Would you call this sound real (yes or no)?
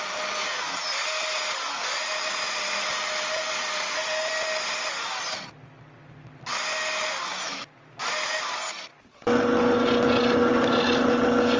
yes